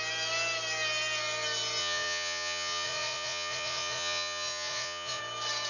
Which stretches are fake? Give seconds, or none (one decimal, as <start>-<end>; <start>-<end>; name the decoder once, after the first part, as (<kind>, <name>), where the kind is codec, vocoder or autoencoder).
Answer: 1.8-5.2 (vocoder, Vocos)